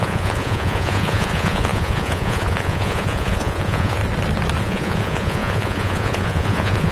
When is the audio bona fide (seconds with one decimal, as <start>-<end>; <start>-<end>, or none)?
4.0-4.6